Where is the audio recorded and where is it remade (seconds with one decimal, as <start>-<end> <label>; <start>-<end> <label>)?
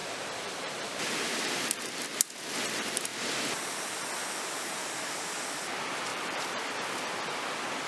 0.0-1.7 remade; 1.7-6.1 recorded; 6.1-7.1 remade; 7.1-7.9 recorded